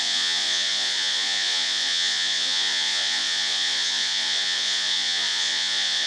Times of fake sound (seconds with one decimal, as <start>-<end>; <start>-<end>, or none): 0.0-6.1